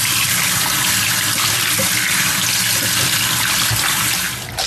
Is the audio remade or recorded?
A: recorded